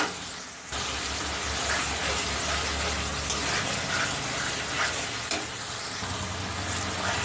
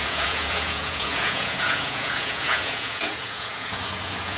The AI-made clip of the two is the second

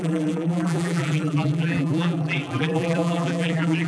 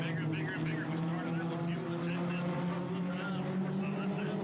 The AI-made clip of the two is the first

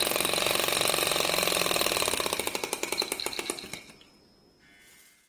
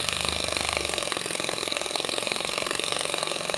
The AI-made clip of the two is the second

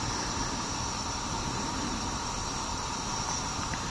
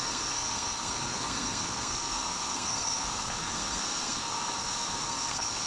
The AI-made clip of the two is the second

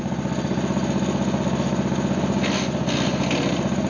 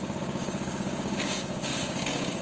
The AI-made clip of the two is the second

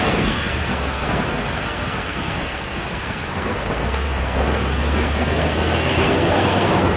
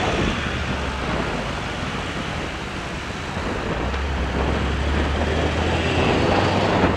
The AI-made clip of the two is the first